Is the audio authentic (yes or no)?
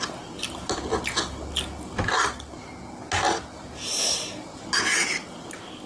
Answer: yes